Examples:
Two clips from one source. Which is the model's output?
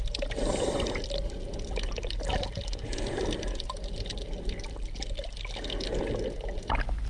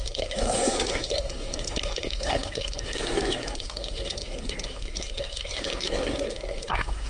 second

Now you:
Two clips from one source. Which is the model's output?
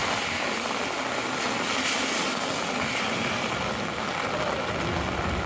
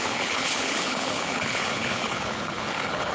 second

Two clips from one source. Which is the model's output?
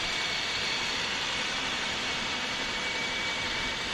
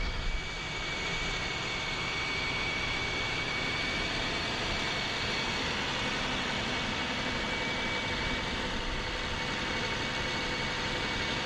first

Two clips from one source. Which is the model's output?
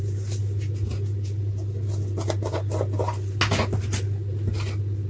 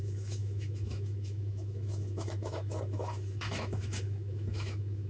second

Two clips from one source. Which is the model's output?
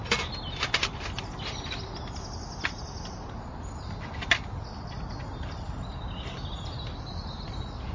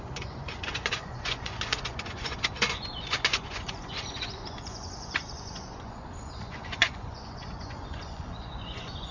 second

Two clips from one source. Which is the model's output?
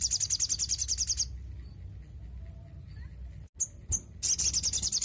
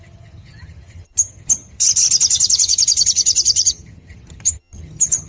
second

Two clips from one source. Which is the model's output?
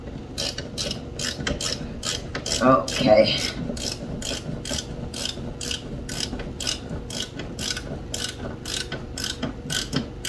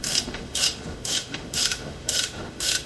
second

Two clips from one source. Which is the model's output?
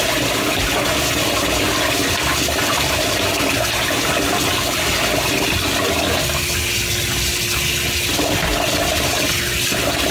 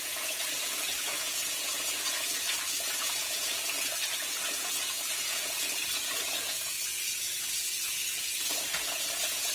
second